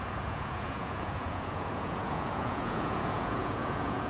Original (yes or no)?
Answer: no